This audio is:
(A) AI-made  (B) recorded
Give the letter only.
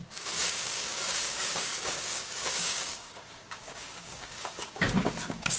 A